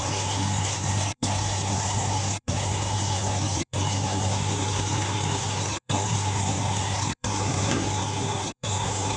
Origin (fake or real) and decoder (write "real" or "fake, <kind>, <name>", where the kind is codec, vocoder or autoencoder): fake, codec, SNAC